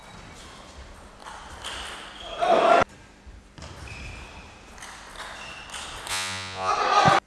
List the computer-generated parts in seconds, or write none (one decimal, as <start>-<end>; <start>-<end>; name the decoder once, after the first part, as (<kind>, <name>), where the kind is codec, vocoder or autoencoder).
6.1-6.7 (vocoder, Vocos)